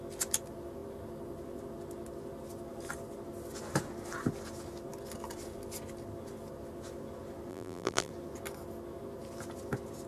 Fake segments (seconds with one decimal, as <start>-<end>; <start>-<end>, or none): 7.5-8.1